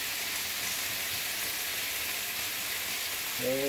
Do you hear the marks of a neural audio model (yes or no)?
no